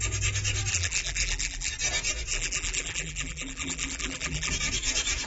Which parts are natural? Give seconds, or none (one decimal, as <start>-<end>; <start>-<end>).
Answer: 0.0-0.7; 1.7-2.3; 4.5-5.3